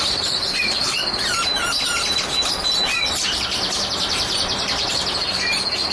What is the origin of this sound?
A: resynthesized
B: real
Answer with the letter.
A